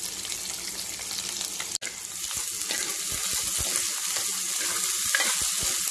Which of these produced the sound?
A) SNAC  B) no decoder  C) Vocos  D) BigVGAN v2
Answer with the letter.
B